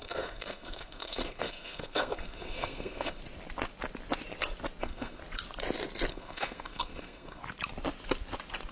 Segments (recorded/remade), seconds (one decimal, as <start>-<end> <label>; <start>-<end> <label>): 0.0-3.2 remade; 3.2-4.8 recorded; 4.8-5.2 remade; 5.2-6.1 recorded; 6.1-7.4 remade; 7.4-8.7 recorded